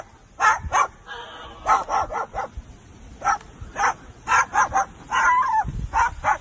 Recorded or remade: recorded